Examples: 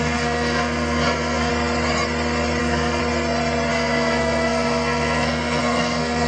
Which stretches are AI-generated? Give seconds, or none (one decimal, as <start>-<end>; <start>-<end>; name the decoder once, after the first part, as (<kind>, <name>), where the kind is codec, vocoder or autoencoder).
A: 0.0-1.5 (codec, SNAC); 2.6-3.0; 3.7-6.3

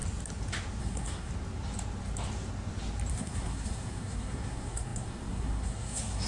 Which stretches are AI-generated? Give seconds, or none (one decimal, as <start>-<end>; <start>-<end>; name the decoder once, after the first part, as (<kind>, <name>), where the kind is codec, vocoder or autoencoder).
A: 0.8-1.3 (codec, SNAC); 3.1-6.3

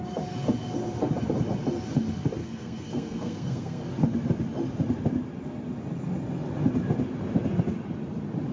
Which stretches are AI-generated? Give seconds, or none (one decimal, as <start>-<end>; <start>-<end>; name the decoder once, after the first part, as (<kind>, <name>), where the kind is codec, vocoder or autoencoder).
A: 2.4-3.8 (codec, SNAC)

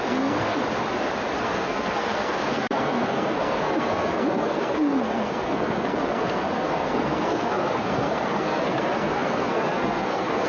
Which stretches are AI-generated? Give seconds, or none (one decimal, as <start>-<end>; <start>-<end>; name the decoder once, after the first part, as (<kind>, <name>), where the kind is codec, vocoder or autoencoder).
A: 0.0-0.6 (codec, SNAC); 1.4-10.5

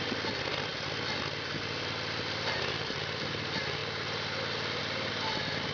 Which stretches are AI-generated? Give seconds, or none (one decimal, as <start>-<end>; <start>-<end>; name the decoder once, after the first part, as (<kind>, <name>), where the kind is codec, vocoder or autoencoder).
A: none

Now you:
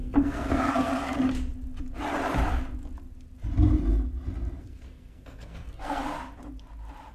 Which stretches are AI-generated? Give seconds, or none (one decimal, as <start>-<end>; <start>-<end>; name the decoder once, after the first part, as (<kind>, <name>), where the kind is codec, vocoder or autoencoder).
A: 0.0-0.9 (codec, SNAC); 4.6-6.0

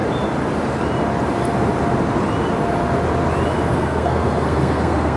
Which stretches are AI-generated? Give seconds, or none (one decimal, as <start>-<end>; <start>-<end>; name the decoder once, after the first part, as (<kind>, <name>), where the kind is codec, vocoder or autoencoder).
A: 3.7-5.2 (codec, SNAC)

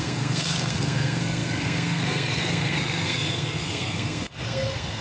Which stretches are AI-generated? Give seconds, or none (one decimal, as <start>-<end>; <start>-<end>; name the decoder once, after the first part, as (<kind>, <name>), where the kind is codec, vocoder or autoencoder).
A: 0.0-5.0 (codec, SNAC)